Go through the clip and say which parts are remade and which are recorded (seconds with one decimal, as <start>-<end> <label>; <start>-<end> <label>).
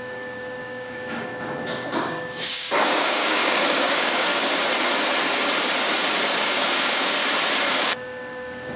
0.0-4.3 remade; 4.3-6.3 recorded; 6.3-7.2 remade; 7.2-7.8 recorded; 7.8-8.8 remade